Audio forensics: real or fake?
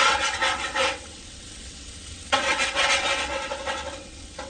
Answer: fake